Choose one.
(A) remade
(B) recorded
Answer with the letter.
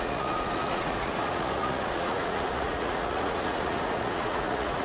A